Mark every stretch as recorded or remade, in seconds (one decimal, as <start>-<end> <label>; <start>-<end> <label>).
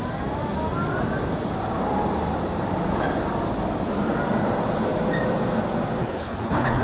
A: 0.0-6.0 recorded; 6.0-6.8 remade